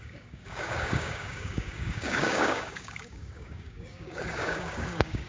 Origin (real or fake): fake